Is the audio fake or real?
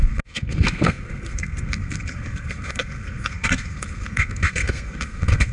fake